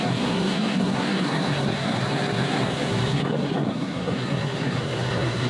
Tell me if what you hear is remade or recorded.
remade